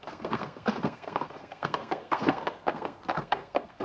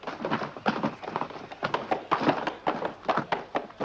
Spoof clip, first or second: first